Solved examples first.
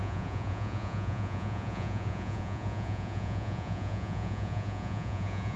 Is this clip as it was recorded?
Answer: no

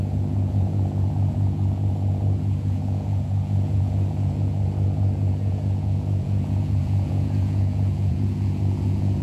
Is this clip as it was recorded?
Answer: no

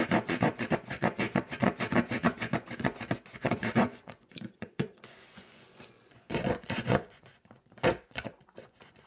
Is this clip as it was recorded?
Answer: no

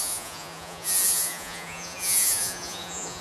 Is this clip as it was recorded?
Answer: no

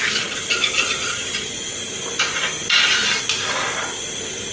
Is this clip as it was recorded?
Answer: yes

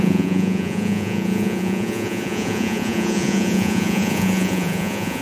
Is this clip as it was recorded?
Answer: no